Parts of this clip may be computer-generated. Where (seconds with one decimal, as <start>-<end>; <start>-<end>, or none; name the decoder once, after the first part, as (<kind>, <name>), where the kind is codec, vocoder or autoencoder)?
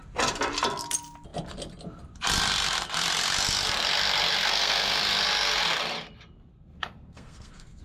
4.4-5.0 (codec, SNAC); 6.5-7.8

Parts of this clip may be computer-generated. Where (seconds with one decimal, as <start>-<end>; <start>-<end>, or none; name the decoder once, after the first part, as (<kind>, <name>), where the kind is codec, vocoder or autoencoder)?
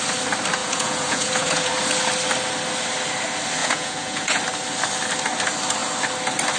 0.6-1.7 (vocoder, Vocos); 3.6-4.4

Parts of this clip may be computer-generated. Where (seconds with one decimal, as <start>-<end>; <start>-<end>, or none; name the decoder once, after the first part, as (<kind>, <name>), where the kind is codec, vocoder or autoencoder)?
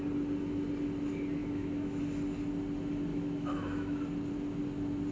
1.4-2.0 (autoencoder, DAC-VAE); 3.1-4.0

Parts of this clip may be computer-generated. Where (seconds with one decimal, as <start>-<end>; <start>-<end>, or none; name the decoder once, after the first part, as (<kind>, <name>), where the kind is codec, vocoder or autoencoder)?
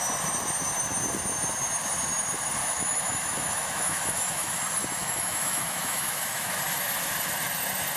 2.6-4.6 (autoencoder, DAC-VAE); 5.0-6.6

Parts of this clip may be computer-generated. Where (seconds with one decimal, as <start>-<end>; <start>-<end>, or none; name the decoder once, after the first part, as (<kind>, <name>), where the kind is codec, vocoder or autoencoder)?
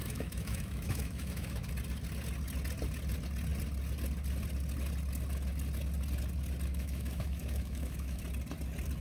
0.0-1.7 (autoencoder, DAC-VAE); 6.7-8.2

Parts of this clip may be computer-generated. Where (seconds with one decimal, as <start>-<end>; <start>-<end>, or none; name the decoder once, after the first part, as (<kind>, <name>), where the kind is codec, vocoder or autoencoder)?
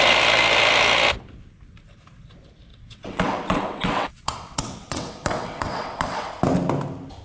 2.7-6.3 (vocoder, WaveNeXt)